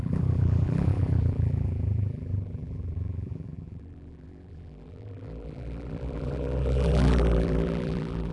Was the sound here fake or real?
fake